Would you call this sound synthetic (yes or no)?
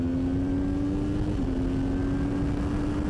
no